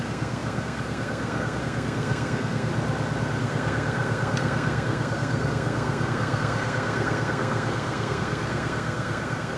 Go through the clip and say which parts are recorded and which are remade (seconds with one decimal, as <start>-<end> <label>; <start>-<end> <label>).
0.0-2.7 remade; 2.7-3.4 recorded; 3.4-9.6 remade